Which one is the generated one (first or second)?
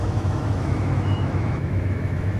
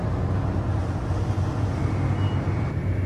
first